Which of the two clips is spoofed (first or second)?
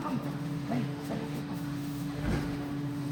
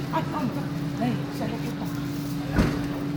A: first